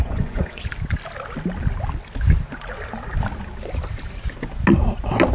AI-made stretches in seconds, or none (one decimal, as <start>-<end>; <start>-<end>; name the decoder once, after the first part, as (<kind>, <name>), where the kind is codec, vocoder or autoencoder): 0.0-0.6 (vocoder, Vocos)